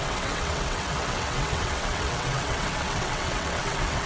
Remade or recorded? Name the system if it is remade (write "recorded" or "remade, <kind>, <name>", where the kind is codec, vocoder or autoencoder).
remade, vocoder, WaveNeXt